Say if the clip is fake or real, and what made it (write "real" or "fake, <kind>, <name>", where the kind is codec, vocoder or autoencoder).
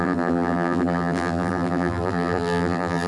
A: fake, vocoder, BigVGAN v2